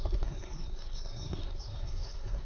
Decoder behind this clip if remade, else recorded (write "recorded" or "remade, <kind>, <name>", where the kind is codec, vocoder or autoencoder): remade, codec, SNAC